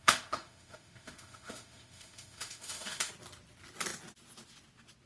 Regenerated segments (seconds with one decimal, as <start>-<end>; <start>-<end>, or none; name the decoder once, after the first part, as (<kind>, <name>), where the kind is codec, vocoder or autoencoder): 0.0-3.1 (autoencoder, DAC-VAE)